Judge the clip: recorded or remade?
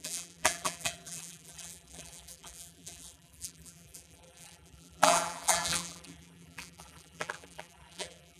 remade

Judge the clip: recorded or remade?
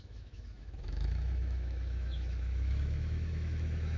remade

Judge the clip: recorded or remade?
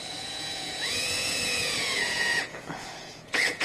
remade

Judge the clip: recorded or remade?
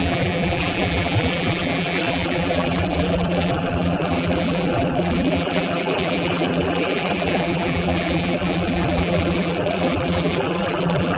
remade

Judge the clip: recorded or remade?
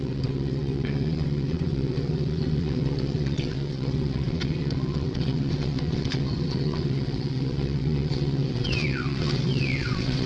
remade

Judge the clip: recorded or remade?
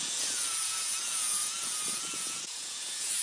remade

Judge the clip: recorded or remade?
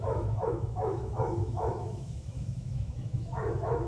remade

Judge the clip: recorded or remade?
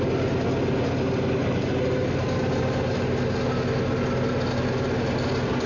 recorded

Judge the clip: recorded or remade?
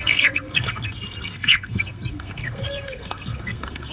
remade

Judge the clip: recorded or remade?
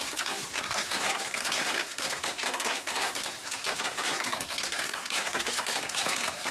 remade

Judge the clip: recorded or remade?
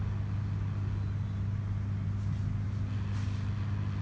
recorded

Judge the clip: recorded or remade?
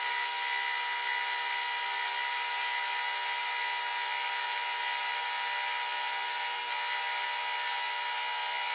recorded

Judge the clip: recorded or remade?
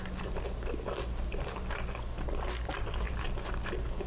recorded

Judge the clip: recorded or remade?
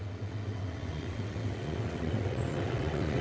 remade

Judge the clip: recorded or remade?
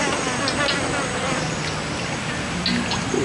recorded